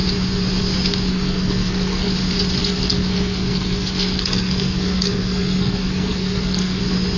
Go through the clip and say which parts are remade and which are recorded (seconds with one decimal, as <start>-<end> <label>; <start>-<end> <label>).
0.0-1.1 recorded; 1.1-2.1 remade; 2.1-2.6 recorded; 2.6-6.8 remade; 6.8-7.2 recorded